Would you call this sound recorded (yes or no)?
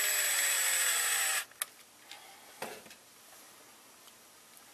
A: yes